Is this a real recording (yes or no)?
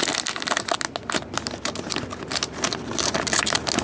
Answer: yes